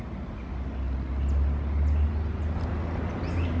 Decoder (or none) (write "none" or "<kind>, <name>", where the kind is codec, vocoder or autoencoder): none